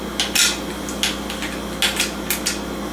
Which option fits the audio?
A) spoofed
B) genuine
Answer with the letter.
B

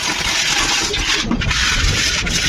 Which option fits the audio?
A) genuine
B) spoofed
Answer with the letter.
A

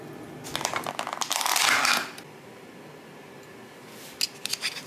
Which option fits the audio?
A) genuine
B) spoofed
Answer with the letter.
A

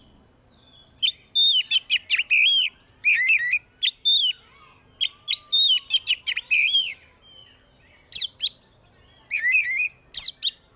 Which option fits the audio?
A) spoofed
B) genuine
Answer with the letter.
B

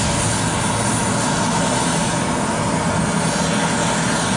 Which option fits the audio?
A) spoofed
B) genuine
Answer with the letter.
B